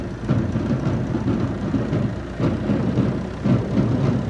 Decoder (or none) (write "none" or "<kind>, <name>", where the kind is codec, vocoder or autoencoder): none